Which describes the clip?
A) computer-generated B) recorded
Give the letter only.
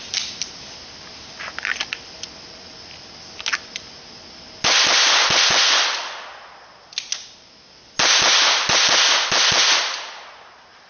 B